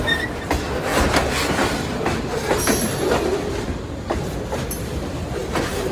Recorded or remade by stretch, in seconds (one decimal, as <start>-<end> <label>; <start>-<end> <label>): 0.0-5.9 recorded